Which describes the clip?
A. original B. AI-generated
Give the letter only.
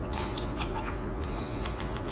B